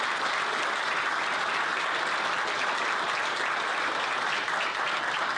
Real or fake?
fake